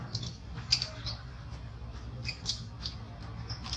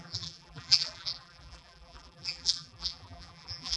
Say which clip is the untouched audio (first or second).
first